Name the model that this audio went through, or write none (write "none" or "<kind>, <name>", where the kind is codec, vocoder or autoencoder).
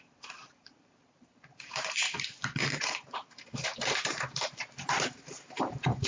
vocoder, BigVGAN v2